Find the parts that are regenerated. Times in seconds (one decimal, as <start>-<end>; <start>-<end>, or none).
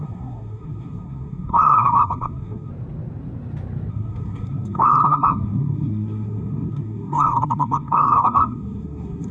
0.0-2.7; 3.9-9.3